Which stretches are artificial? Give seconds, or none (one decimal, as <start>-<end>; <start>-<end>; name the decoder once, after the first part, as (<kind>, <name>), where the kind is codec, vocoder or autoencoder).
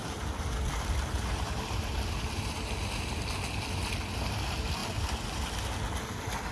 none